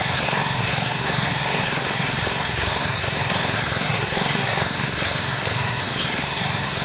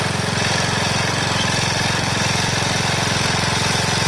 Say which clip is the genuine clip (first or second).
second